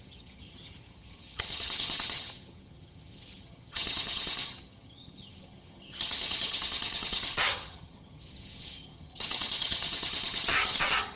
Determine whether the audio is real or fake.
fake